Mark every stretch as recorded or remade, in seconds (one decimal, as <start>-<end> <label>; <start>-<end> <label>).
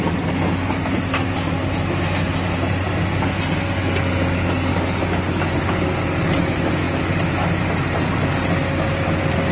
0.0-4.7 recorded; 4.7-7.2 remade; 7.2-9.5 recorded